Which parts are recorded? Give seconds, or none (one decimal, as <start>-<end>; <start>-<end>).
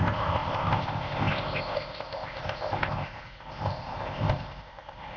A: none